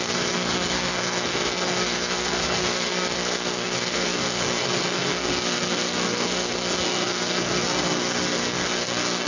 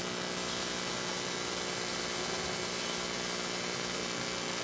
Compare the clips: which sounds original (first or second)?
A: second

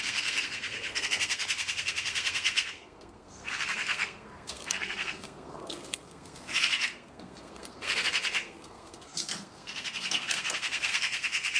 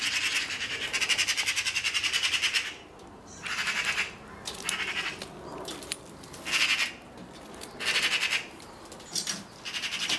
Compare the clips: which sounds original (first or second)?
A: second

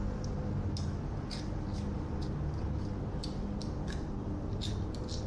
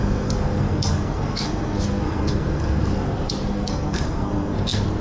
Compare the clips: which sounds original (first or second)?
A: first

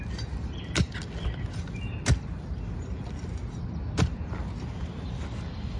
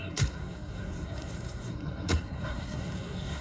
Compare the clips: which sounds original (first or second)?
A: first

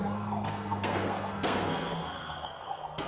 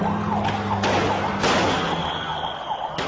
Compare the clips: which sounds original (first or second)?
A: second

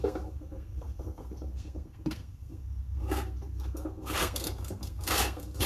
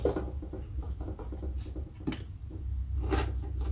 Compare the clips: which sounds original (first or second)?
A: second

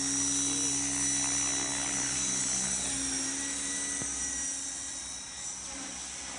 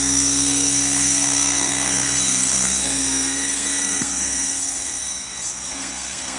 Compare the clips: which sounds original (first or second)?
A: first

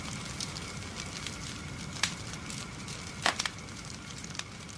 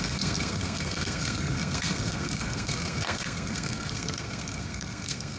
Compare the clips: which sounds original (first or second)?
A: first